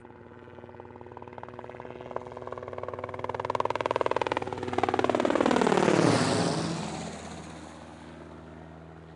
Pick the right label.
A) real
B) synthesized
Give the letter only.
A